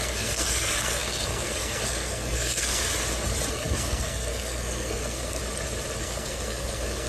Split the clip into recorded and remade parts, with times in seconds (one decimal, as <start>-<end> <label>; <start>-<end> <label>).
0.0-2.9 remade; 2.9-3.5 recorded; 3.5-5.4 remade; 5.4-6.0 recorded; 6.0-7.1 remade